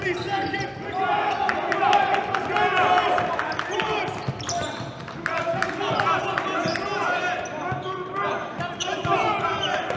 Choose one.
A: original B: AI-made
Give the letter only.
A